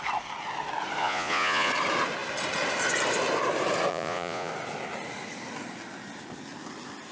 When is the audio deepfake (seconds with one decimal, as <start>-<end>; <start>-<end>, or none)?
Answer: 1.0-1.7; 3.9-4.5